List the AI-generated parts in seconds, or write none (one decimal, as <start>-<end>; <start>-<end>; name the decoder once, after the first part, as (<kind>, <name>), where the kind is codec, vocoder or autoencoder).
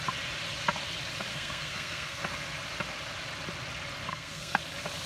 1.3-2.2 (codec, SNAC); 4.1-4.6